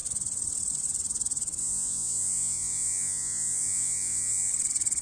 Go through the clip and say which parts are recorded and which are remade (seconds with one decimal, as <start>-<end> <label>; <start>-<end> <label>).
0.0-1.6 recorded; 1.6-4.5 remade; 4.5-5.0 recorded